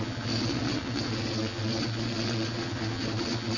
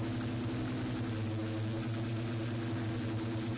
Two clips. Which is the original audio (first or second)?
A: second